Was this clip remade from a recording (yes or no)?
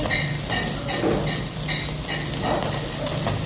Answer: no